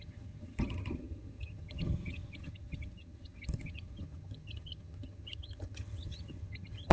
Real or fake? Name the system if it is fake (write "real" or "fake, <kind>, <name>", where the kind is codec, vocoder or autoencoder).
fake, vocoder, HiFi-GAN